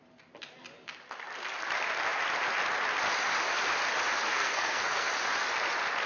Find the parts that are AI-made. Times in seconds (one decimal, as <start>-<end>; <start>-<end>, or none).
4.3-5.1